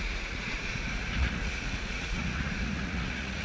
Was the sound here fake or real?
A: fake